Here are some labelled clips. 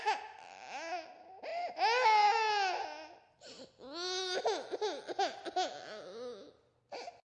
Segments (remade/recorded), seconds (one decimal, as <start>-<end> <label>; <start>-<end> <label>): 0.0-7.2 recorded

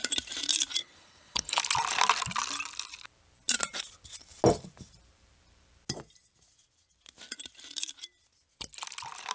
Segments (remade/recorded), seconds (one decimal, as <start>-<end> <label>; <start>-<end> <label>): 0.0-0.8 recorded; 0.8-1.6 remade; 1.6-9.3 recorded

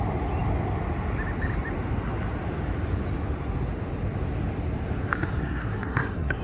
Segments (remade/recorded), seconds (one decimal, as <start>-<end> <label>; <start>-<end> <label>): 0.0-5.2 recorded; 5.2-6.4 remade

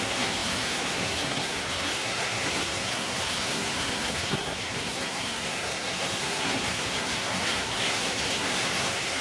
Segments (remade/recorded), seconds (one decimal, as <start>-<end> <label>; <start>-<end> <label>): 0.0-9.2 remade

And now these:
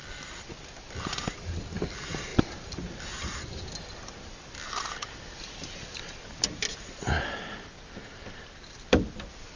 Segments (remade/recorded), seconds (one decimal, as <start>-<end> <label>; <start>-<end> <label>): 0.0-0.5 remade; 0.5-2.3 recorded; 2.3-6.3 remade; 6.3-9.6 recorded